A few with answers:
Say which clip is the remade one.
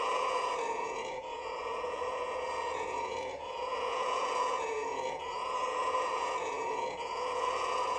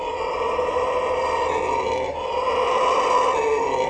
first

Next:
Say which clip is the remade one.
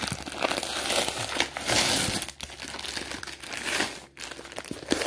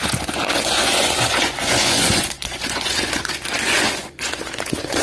second